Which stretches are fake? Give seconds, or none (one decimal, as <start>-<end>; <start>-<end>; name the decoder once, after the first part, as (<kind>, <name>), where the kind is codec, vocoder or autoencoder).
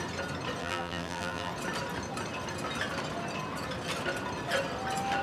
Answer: 0.6-1.5 (vocoder, BigVGAN v2)